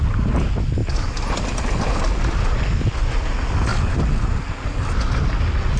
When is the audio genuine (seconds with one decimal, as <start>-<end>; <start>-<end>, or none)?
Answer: 0.0-5.8